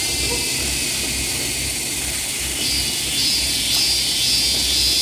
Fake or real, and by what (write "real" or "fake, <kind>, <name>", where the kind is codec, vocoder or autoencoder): real